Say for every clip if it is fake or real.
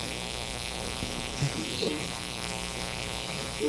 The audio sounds fake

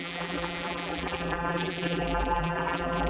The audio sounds fake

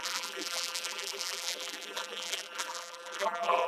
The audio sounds fake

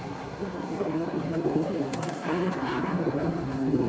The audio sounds fake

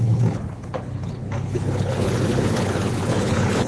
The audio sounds fake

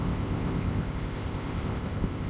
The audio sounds fake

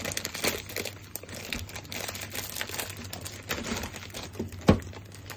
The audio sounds real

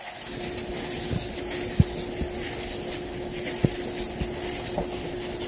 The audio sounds real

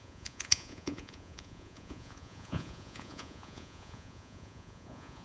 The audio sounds fake